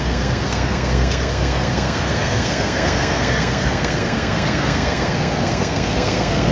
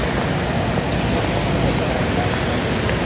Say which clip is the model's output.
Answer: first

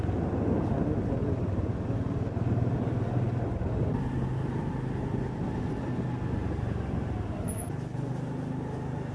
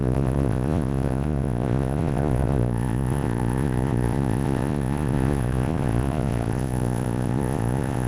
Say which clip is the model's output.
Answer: second